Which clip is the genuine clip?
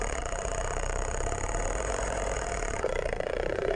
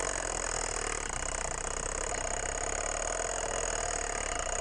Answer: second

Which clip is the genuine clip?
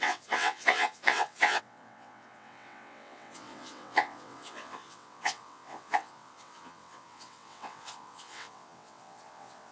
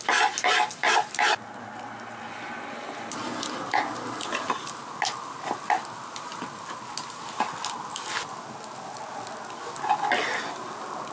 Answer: second